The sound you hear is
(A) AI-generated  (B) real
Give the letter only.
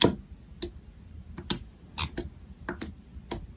B